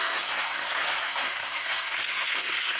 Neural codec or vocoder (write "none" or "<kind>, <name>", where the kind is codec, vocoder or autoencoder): codec, SNAC